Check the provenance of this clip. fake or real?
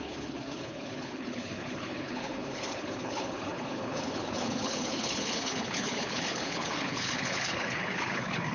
fake